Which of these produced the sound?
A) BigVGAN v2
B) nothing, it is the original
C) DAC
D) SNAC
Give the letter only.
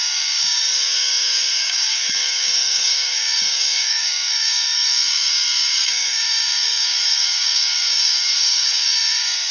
C